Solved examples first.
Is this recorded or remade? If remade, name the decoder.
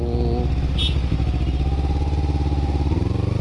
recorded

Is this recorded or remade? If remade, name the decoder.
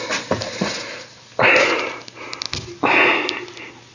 recorded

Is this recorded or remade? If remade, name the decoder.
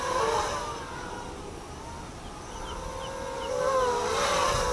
recorded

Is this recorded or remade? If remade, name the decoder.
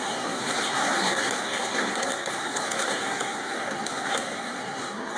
remade, codec, SNAC